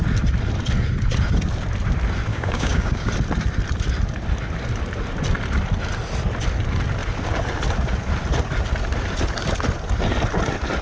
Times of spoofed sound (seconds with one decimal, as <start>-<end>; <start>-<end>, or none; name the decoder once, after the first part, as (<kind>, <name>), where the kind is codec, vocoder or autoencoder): 2.3-3.1 (codec, DAC)